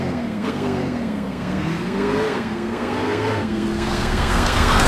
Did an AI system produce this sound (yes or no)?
yes